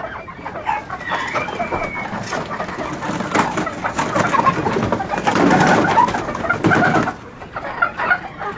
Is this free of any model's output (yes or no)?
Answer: yes